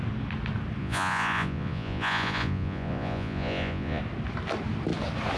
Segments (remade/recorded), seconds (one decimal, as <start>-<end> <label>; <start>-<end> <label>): 0.0-0.8 recorded; 0.8-4.0 remade; 4.0-5.4 recorded